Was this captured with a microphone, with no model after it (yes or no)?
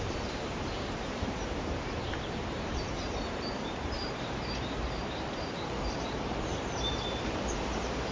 no